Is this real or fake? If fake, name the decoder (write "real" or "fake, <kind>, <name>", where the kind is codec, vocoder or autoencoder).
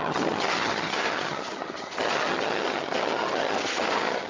fake, vocoder, HiFi-GAN